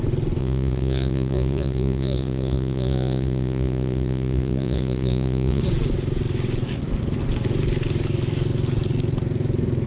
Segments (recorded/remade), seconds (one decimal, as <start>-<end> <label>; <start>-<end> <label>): 0.0-0.4 recorded; 0.4-5.6 remade; 5.6-9.9 recorded